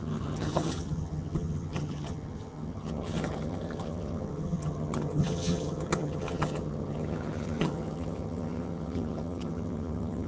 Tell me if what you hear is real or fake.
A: fake